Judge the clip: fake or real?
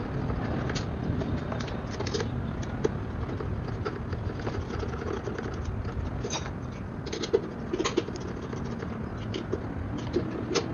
real